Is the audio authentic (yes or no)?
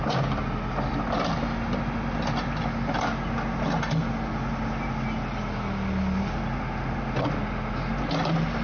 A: yes